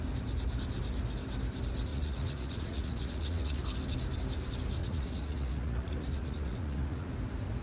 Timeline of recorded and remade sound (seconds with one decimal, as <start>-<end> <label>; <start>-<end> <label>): 0.0-1.9 recorded; 1.9-3.6 remade; 3.6-4.8 recorded; 4.8-7.1 remade; 7.1-7.6 recorded